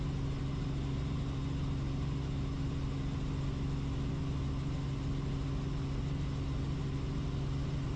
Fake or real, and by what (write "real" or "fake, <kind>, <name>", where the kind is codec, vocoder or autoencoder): real